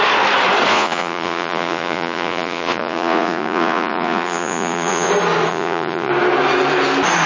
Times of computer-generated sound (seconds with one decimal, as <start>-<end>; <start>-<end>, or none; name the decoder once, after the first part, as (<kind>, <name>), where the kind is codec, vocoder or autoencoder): 0.7-5.1 (vocoder, Vocos); 5.5-6.1

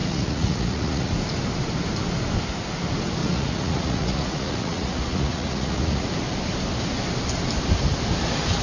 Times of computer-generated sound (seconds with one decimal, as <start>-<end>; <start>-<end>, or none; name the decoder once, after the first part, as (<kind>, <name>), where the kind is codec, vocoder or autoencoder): 0.0-1.1 (vocoder, Vocos); 3.2-6.1

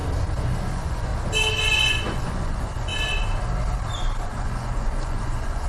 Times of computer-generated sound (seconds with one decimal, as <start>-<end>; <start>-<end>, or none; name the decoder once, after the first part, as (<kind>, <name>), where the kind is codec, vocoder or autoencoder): 0.7-1.1 (vocoder, Vocos); 1.6-2.9; 4.2-5.7

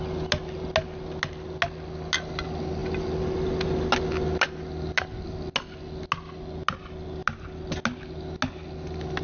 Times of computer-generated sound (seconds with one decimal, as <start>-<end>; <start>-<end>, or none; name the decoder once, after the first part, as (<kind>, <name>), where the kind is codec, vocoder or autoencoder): none

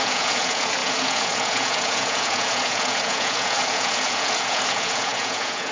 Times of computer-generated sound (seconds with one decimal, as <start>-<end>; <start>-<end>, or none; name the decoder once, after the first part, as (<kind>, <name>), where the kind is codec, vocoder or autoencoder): 0.0-5.7 (vocoder, Vocos)

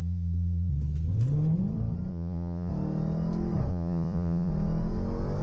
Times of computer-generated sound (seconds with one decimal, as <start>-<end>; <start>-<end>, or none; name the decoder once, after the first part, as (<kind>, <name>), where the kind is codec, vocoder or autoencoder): 0.0-0.7 (vocoder, Vocos); 2.1-2.7; 3.7-4.5

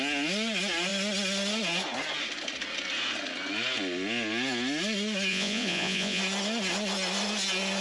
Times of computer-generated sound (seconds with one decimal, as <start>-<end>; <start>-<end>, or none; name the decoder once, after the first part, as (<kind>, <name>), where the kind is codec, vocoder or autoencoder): 5.3-6.2 (vocoder, Vocos)

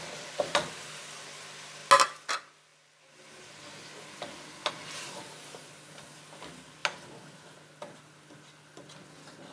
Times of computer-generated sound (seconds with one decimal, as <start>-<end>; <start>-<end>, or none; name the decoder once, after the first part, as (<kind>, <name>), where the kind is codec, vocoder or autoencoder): none